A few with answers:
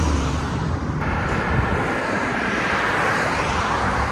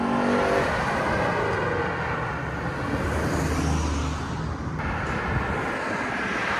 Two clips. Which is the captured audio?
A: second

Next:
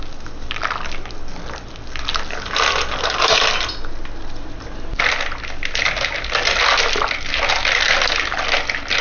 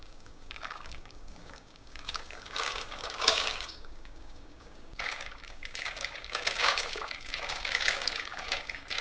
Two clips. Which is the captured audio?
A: first